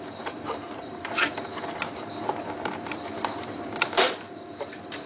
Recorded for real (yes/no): no